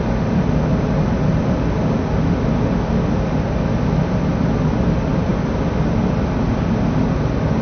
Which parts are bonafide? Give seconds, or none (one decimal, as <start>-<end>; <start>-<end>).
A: 0.0-7.6